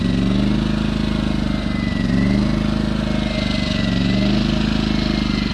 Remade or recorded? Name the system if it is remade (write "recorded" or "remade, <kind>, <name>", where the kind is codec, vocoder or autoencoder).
recorded